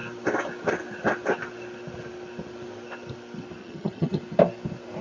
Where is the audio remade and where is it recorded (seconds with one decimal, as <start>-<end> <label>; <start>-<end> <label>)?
0.0-3.6 recorded; 3.6-4.2 remade; 4.2-5.0 recorded